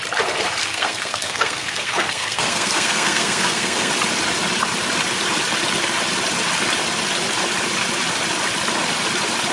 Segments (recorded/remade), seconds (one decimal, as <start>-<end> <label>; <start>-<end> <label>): 0.0-0.6 recorded; 0.6-3.9 remade; 3.9-9.5 recorded